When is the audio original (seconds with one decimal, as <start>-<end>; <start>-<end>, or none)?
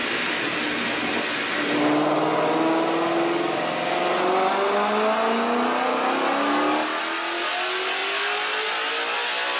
0.0-9.6